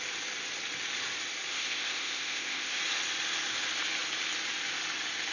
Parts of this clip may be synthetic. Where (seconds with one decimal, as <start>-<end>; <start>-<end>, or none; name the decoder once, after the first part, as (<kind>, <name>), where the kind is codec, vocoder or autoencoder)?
1.5-2.8 (codec, ZipCodec)